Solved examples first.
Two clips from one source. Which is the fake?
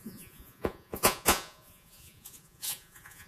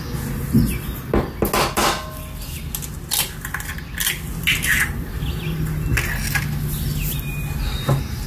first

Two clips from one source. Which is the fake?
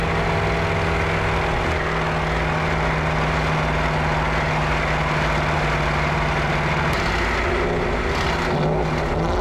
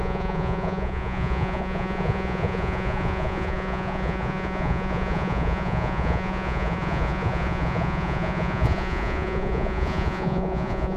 second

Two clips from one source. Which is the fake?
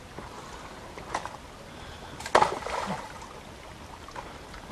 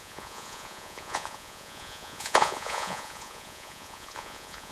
second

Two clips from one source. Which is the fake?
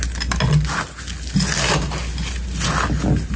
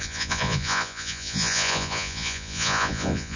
second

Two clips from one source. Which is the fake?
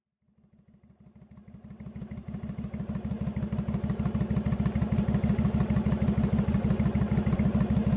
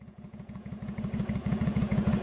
second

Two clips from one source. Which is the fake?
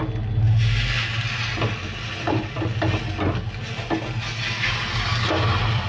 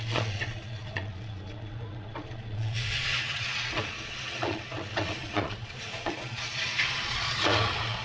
second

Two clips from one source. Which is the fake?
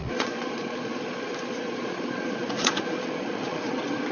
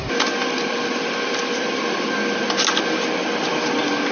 first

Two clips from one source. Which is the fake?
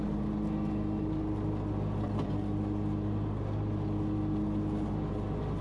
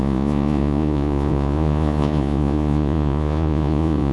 second